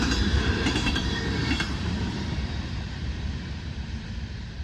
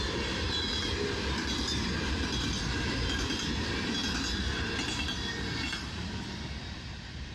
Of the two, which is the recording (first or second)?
second